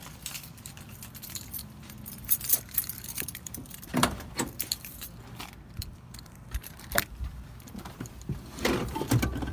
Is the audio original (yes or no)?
no